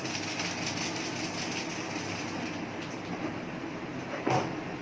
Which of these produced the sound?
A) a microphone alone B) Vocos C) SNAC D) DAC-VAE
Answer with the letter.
A